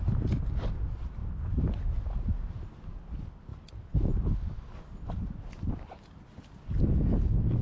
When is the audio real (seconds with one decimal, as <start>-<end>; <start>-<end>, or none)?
0.0-7.6